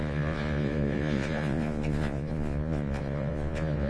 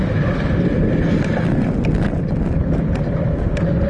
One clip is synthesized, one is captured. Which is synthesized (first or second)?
first